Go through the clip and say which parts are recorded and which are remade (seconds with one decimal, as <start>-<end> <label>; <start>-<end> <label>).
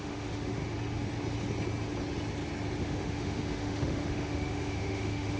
0.0-0.6 remade; 0.6-2.8 recorded; 2.8-5.4 remade